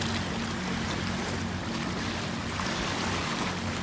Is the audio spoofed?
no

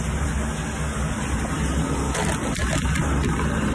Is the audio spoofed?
no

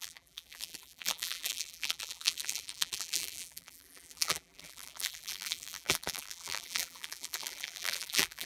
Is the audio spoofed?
yes